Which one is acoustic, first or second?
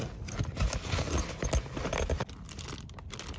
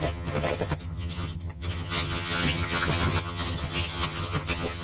first